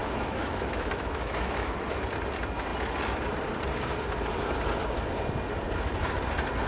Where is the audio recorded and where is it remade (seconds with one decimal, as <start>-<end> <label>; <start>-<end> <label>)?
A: 0.0-1.8 remade; 1.8-6.7 recorded